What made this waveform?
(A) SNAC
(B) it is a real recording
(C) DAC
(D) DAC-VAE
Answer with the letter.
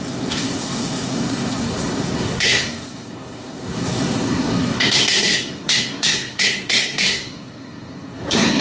A